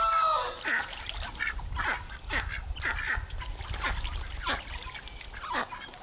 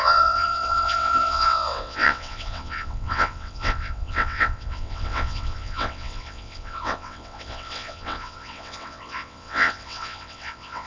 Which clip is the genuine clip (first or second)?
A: first